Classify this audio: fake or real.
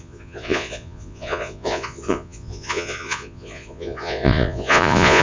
fake